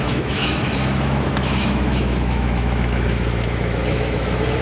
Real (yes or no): no